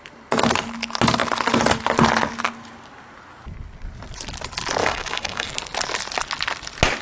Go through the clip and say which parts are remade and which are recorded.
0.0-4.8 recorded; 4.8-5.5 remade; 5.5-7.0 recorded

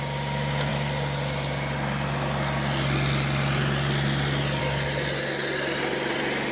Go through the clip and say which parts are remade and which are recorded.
0.0-6.5 recorded